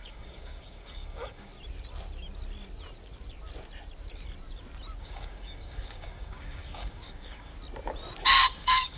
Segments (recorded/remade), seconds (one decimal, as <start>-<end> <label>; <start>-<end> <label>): 0.0-1.5 remade; 1.5-5.0 recorded; 5.0-7.5 remade; 7.5-8.2 recorded; 8.2-9.0 remade